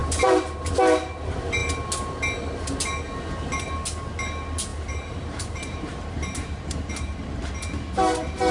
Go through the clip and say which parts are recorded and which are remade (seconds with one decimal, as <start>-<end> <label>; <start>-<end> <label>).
0.0-0.7 remade; 0.7-4.7 recorded; 4.7-7.4 remade; 7.4-8.5 recorded